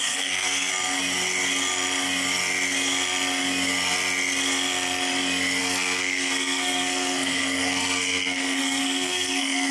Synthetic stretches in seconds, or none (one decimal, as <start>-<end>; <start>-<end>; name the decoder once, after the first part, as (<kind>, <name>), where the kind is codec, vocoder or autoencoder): 0.0-0.7 (codec, SNAC); 5.6-9.7